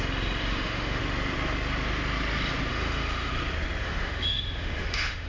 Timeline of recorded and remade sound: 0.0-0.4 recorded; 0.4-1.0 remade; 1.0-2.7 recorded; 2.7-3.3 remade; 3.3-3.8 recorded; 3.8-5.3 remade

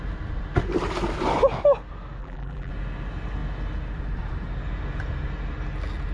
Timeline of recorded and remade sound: 0.0-2.2 recorded; 2.2-2.7 remade; 2.7-6.1 recorded

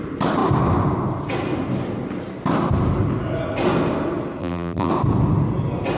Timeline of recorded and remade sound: 0.0-4.4 recorded; 4.4-4.9 remade; 4.9-6.0 recorded

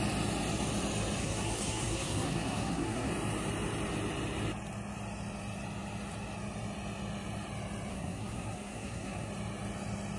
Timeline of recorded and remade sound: 0.0-1.2 recorded; 1.2-3.1 remade; 3.1-7.9 recorded; 7.9-9.3 remade; 9.3-10.2 recorded

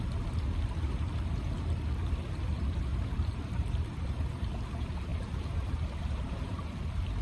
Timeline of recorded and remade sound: 0.0-2.9 recorded; 2.9-4.5 remade; 4.5-5.1 recorded; 5.1-6.6 remade; 6.6-7.2 recorded